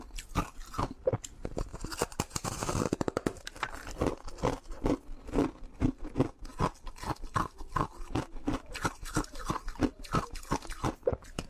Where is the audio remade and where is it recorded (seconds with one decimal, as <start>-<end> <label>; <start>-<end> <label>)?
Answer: 0.0-1.7 recorded; 1.7-3.8 remade; 3.8-11.5 recorded